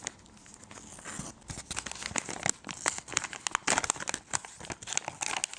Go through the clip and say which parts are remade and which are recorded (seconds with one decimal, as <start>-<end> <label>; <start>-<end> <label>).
0.0-5.6 recorded